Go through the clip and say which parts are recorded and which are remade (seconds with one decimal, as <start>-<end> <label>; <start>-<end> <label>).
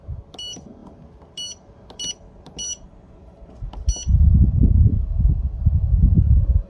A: 0.0-6.7 recorded